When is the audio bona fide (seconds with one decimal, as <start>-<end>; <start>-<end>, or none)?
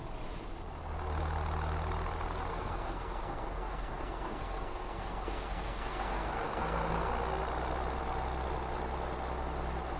0.0-2.5; 7.1-10.0